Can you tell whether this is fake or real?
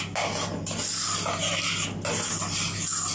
real